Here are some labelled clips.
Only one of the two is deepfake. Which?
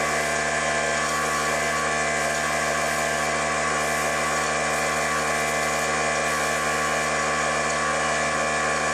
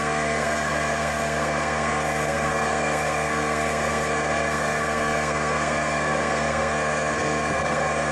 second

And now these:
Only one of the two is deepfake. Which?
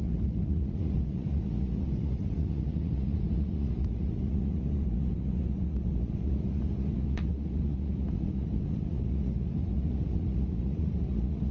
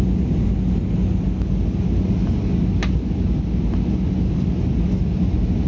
first